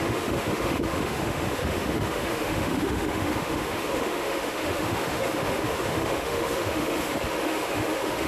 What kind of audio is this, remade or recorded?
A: remade